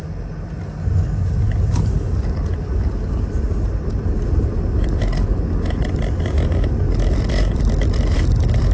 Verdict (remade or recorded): recorded